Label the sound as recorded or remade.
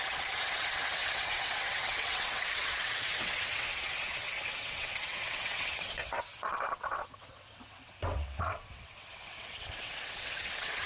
remade